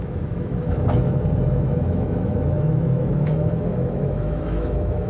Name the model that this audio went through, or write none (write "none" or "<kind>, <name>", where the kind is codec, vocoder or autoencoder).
autoencoder, DAC-VAE